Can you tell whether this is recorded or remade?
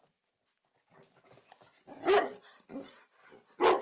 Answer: recorded